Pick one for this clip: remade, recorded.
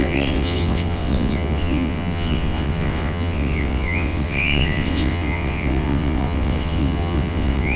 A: remade